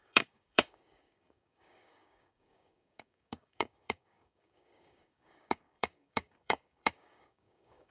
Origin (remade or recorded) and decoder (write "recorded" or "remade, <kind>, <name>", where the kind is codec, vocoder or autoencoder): remade, codec, DAC